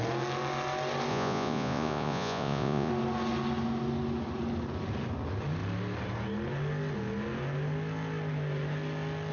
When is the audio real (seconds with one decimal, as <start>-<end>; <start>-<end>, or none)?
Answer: 0.0-1.1; 2.9-9.3